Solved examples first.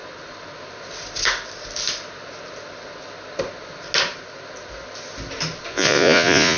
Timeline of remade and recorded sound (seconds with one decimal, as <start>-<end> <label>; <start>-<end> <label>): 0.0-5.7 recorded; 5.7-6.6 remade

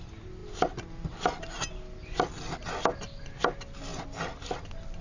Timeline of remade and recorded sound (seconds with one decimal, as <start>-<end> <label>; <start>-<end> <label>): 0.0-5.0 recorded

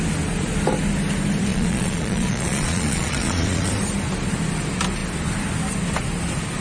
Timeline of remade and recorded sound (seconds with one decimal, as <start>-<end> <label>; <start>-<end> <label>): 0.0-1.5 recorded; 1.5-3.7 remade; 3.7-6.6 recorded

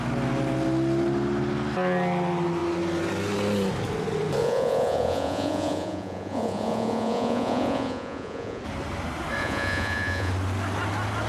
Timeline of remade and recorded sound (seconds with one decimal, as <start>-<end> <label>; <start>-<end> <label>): 0.0-4.4 recorded; 4.4-8.6 remade; 8.6-9.4 recorded; 9.4-10.3 remade; 10.3-11.3 recorded